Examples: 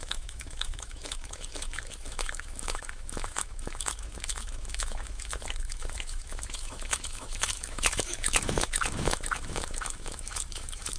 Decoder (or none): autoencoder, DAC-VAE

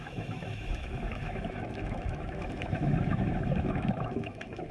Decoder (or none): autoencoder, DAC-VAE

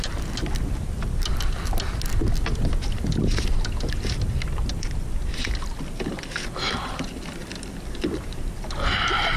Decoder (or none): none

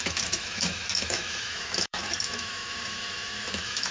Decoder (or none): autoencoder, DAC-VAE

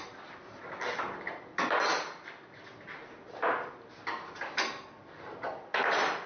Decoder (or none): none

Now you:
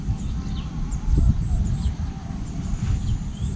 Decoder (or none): none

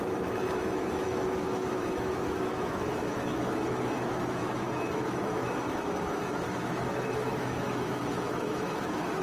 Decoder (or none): autoencoder, DAC-VAE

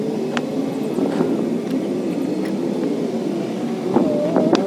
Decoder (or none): none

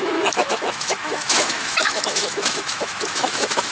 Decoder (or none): autoencoder, DAC-VAE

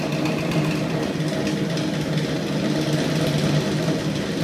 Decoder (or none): none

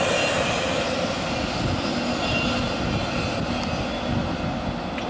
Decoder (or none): none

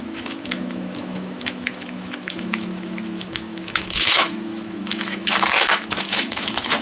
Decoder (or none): autoencoder, DAC-VAE